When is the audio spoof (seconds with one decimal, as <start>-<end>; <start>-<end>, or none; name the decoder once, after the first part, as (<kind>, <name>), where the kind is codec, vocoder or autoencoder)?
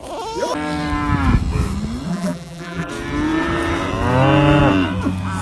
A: 2.1-2.9 (vocoder, BigVGAN v2)